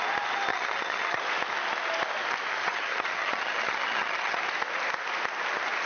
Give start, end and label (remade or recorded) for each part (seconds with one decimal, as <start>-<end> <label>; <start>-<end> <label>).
0.0-0.5 recorded; 0.5-1.2 remade; 1.2-2.6 recorded; 2.6-4.4 remade; 4.4-5.9 recorded